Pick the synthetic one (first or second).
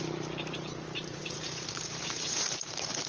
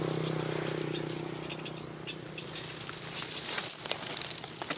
first